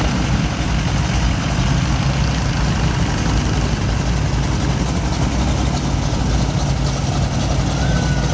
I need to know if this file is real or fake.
real